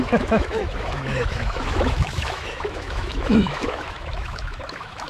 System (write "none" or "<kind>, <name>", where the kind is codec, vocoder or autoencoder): autoencoder, DAC-VAE